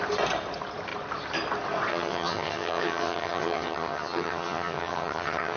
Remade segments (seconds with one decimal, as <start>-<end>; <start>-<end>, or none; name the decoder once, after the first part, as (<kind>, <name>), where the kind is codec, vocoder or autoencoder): 1.9-5.6 (vocoder, HiFi-GAN)